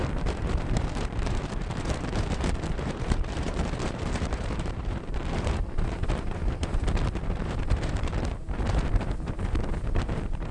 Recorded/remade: remade